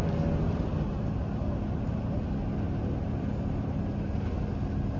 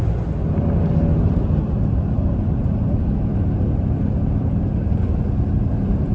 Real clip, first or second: first